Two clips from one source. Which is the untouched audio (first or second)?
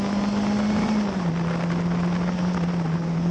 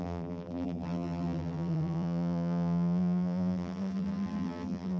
first